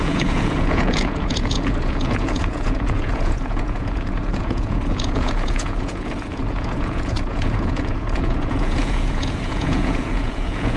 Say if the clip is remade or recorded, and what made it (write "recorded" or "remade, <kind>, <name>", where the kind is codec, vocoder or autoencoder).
remade, vocoder, Vocos